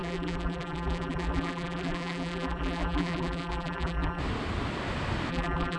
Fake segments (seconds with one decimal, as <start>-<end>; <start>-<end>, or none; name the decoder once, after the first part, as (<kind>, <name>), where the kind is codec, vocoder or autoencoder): 0.0-4.2 (vocoder, BigVGAN v2); 5.3-5.8